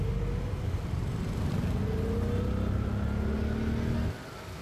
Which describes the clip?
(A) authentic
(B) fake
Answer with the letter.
A